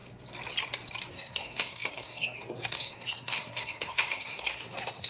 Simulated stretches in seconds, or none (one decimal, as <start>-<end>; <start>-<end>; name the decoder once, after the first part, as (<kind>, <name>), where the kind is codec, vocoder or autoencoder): 1.1-5.1 (codec, SNAC)